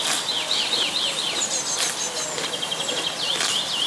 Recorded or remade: recorded